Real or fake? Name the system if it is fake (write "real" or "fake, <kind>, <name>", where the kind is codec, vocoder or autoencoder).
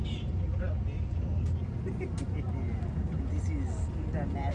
real